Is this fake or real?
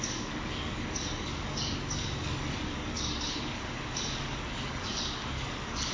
fake